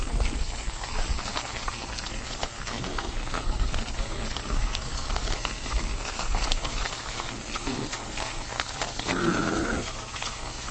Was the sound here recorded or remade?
remade